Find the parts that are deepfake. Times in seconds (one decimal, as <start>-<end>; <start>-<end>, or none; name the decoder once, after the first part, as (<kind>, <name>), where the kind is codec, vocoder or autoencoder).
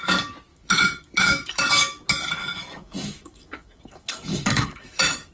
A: 0.5-1.6 (autoencoder, DAC-VAE); 2.4-5.3